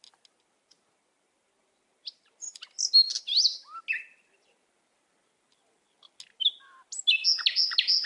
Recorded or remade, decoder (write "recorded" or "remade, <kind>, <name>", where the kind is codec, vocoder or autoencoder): recorded